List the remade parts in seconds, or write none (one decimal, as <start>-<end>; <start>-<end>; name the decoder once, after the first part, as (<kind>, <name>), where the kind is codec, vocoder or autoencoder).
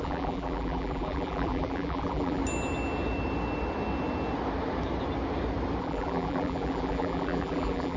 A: 0.0-2.4 (vocoder, BigVGAN v2); 5.8-8.0